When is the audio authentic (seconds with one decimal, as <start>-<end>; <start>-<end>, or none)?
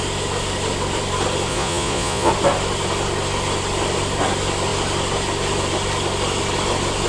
0.0-1.5; 2.3-7.1